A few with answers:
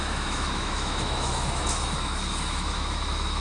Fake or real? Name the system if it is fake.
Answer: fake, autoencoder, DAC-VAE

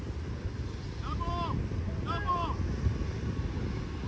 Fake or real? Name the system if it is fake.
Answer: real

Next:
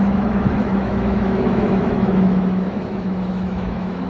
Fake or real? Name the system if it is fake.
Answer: fake, autoencoder, DAC-VAE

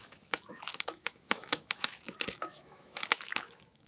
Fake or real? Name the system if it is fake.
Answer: fake, autoencoder, DAC-VAE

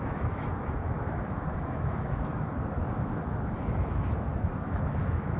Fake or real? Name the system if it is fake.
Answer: fake, autoencoder, DAC-VAE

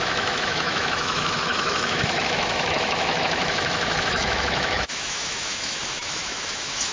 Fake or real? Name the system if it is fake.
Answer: fake, autoencoder, DAC-VAE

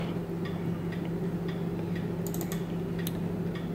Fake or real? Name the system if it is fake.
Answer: real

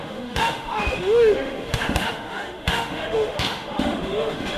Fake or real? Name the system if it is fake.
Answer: fake, autoencoder, DAC-VAE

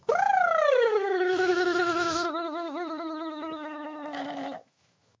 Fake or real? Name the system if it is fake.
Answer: fake, autoencoder, DAC-VAE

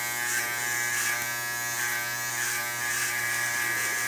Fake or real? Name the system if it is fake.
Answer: real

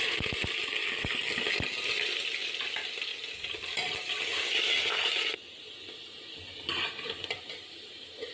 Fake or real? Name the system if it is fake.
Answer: real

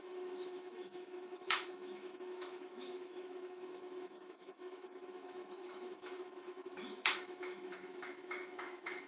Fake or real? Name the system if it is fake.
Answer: fake, autoencoder, DAC-VAE